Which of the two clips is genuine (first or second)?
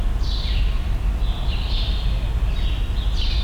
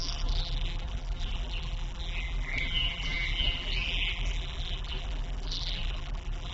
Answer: first